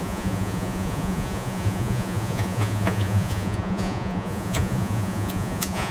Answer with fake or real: fake